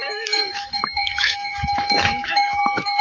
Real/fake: fake